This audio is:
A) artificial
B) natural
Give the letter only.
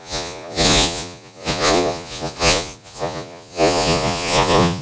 A